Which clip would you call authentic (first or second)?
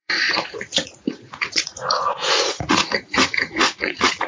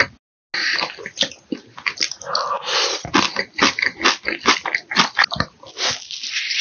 second